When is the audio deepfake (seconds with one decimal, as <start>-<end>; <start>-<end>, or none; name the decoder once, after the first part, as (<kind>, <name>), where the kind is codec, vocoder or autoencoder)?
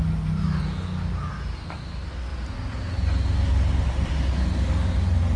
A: none